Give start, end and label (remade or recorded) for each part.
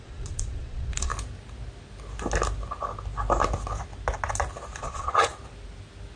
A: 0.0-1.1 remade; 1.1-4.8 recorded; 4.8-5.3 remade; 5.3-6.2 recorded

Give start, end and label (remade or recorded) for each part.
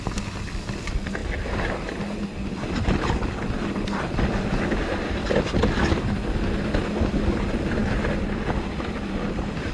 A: 0.0-9.7 recorded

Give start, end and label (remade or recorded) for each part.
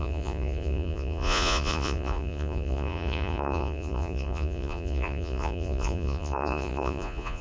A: 0.0-7.4 remade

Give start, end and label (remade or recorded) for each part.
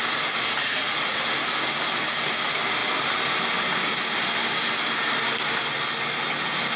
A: 0.0-0.6 recorded; 0.6-1.2 remade; 1.2-6.8 recorded